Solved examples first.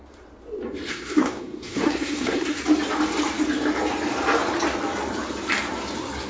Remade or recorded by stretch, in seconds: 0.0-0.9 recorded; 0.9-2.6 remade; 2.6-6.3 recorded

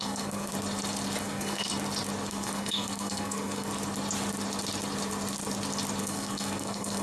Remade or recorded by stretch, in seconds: 0.0-0.5 remade; 0.5-1.2 recorded; 1.2-1.7 remade; 1.7-2.3 recorded; 2.3-3.7 remade; 3.7-6.0 recorded; 6.0-7.0 remade

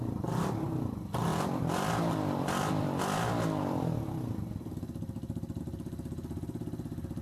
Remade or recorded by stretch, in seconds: 0.0-7.2 recorded

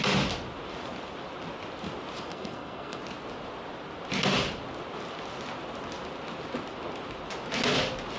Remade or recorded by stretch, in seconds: 0.0-2.3 recorded; 2.3-3.0 remade; 3.0-8.2 recorded

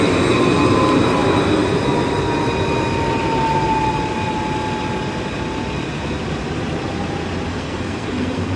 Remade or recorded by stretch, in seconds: 0.0-7.5 recorded; 7.5-8.6 remade

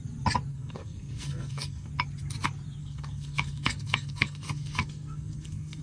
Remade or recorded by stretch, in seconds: 0.0-0.5 recorded; 0.5-1.9 remade; 1.9-2.8 recorded; 2.8-5.8 remade